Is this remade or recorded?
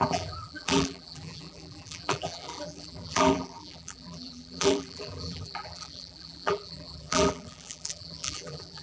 remade